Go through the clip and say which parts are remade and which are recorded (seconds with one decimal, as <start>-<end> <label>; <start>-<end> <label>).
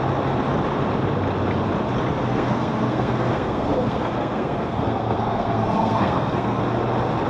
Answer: 0.0-2.2 recorded; 2.2-6.6 remade; 6.6-7.3 recorded